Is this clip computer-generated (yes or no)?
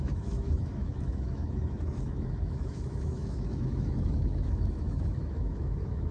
yes